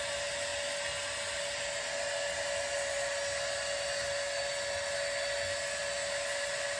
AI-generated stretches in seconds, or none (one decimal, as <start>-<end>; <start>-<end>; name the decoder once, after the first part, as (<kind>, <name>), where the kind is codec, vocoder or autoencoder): none